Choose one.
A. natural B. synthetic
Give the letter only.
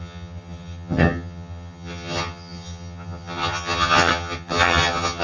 B